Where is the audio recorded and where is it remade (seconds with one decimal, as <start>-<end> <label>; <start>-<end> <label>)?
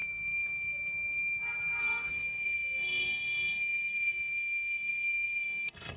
0.0-1.8 recorded; 1.8-6.0 remade